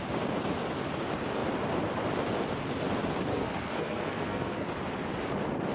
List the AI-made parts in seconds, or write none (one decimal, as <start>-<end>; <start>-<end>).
3.3-4.7